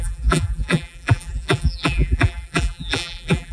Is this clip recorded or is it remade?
remade